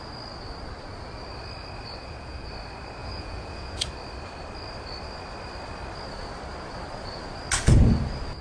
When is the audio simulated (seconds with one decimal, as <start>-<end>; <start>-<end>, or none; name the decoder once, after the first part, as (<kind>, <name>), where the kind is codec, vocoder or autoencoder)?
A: 2.0-2.5 (vocoder, Vocos); 3.0-3.9